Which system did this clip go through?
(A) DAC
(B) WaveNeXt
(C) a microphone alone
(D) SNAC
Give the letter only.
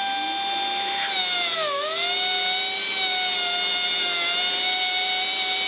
C